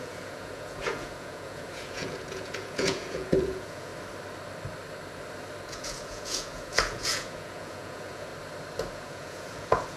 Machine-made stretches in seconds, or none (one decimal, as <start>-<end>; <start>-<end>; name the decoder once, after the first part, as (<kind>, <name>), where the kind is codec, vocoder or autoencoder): 0.0-3.9 (vocoder, Vocos); 5.6-8.3; 8.9-10.0